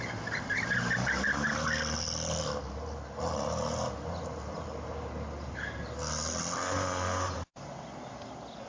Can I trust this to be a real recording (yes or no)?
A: yes